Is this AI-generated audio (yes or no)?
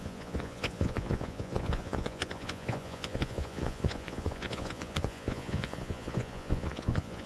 yes